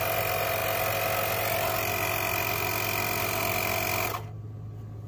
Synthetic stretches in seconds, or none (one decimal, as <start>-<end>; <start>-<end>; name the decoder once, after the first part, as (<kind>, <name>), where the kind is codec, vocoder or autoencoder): none